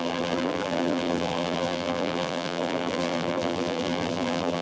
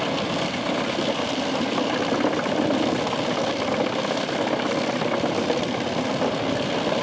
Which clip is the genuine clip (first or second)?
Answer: second